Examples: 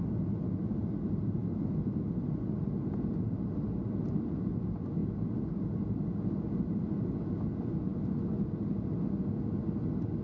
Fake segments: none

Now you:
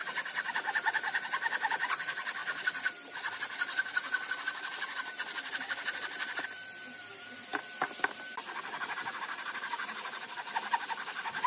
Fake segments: 0.0-2.4 (vocoder, BigVGAN v2); 3.3-7.5; 9.2-11.5

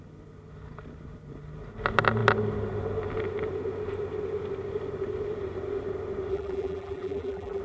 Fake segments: 6.3-7.6 (vocoder, BigVGAN v2)

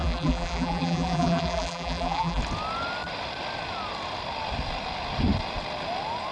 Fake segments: 0.0-2.4 (vocoder, BigVGAN v2)

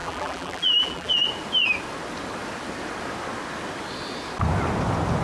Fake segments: 0.0-1.1 (vocoder, BigVGAN v2)